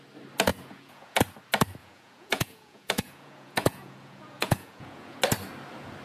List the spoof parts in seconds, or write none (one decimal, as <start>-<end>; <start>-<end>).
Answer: 0.5-1.2; 1.8-5.2